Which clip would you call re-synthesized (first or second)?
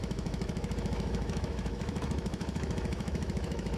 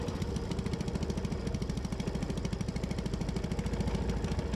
first